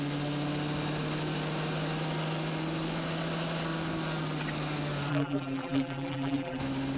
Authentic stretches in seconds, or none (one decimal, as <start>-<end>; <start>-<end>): 0.0-5.1; 6.6-7.0